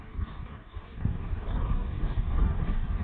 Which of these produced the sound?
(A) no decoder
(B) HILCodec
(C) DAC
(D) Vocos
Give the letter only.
C